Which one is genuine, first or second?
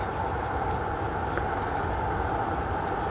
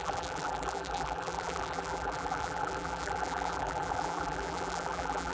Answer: first